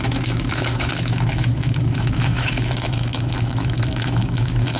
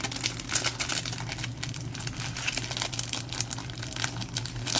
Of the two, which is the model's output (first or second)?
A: first